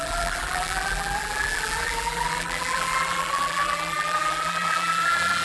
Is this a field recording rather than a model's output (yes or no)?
no